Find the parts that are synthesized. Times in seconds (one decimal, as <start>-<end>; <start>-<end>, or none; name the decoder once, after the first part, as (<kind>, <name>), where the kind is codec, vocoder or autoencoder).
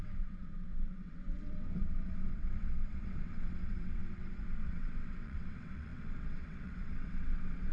0.0-7.7 (vocoder, WaveNeXt)